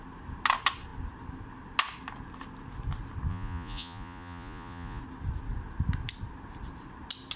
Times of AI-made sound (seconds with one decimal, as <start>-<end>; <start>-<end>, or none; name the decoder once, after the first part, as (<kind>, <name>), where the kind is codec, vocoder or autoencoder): 3.3-5.0 (vocoder, Vocos)